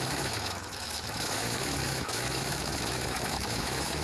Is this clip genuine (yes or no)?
no